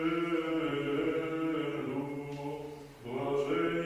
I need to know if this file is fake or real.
real